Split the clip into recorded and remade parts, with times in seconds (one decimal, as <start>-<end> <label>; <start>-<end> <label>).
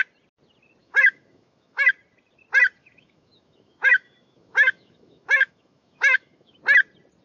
0.0-0.8 recorded; 0.8-1.9 remade; 1.9-2.8 recorded; 2.8-6.6 remade; 6.6-7.2 recorded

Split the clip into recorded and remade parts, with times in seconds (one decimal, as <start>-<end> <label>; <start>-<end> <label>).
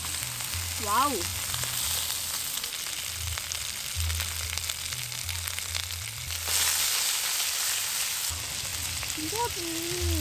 0.0-10.2 recorded